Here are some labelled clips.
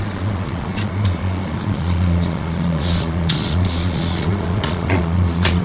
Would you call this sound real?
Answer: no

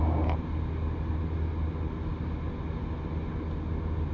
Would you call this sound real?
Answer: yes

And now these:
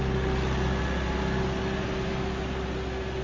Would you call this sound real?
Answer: yes